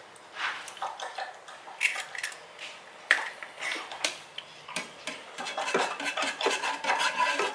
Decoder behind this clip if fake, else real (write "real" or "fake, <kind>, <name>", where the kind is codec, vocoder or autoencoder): fake, vocoder, BigVGAN v2